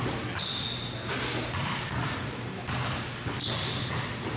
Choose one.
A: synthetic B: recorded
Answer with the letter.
B